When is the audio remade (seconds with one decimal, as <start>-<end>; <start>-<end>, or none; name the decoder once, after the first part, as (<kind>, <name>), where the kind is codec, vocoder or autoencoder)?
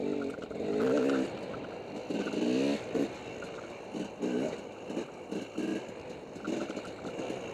none